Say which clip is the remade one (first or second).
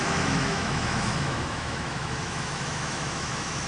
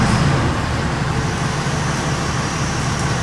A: first